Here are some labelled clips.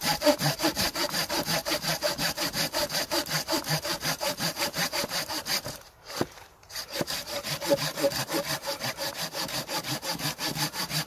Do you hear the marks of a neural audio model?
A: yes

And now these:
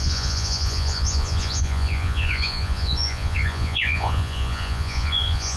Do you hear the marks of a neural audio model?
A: yes